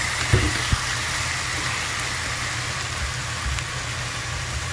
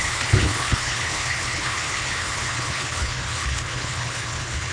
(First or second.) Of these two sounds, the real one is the first